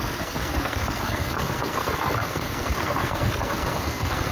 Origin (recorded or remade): remade